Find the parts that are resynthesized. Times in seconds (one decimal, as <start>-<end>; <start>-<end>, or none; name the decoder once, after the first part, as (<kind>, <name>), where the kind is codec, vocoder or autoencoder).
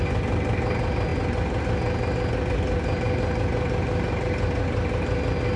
none